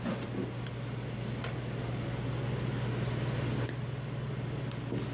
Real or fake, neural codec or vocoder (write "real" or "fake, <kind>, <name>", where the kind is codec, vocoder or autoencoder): real